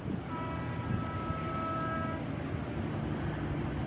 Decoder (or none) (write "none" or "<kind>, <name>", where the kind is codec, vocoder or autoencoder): none